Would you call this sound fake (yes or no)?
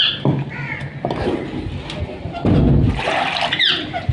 no